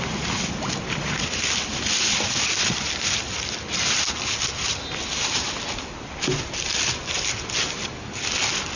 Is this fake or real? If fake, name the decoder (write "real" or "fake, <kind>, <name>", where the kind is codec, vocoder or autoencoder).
real